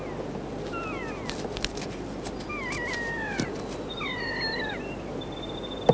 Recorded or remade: remade